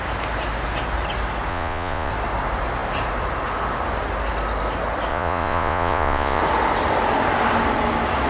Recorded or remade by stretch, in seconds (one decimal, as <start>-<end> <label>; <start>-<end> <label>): 0.0-1.5 recorded; 1.5-2.1 remade; 2.1-5.1 recorded; 5.1-6.4 remade; 6.4-8.3 recorded